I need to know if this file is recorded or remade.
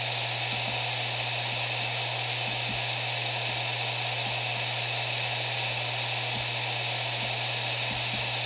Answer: recorded